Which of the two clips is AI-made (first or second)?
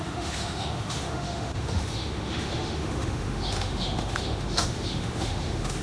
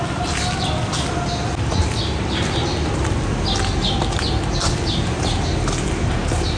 first